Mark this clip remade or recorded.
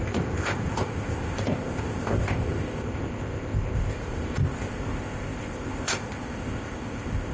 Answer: remade